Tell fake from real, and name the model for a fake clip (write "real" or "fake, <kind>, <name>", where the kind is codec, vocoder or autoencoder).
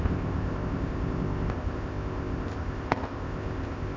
fake, codec, ZipCodec